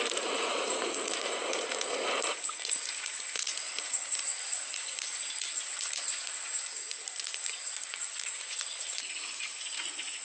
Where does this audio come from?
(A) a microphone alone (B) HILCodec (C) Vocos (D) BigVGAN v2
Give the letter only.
C